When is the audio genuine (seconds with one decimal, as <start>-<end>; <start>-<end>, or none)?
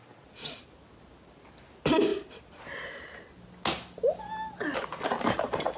0.0-5.8